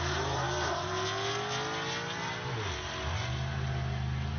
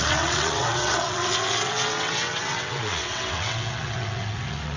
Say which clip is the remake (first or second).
second